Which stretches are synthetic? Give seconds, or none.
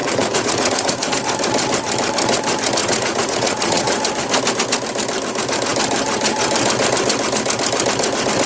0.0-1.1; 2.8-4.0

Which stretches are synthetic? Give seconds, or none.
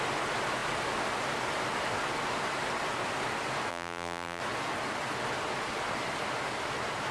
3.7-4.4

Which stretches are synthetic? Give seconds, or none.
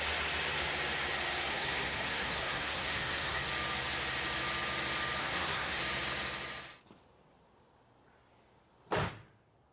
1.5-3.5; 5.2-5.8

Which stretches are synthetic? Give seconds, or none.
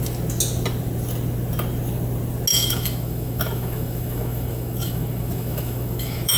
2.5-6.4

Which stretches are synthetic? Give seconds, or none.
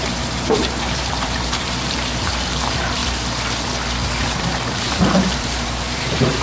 0.0-3.0; 4.2-6.4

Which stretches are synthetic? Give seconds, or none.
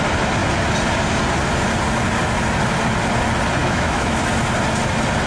3.6-4.2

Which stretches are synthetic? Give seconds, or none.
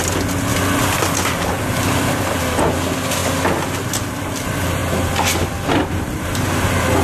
none